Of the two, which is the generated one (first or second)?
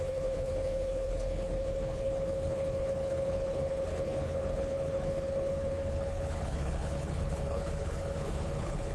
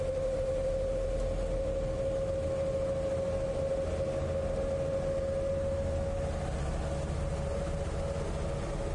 first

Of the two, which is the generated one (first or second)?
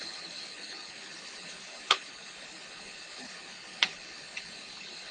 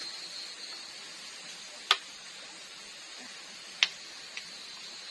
first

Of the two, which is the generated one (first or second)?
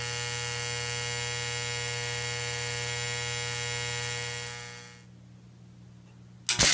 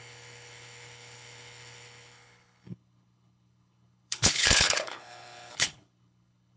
second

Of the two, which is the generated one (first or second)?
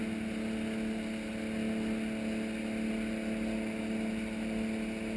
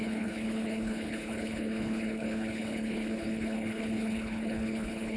second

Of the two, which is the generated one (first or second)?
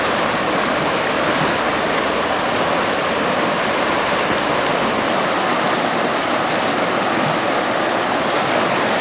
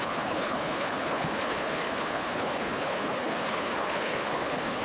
second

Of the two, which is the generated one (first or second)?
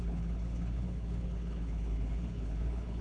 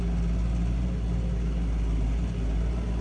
first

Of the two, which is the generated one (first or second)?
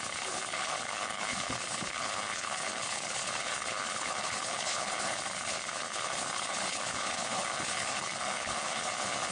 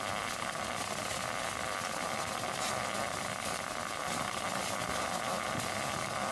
first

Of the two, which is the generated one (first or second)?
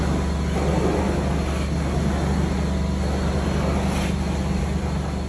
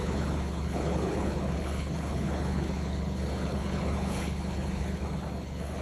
second